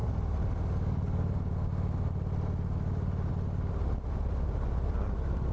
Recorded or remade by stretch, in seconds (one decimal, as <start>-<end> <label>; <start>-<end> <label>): 0.0-5.5 recorded